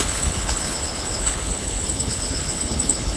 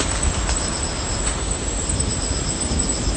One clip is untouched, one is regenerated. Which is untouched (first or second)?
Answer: second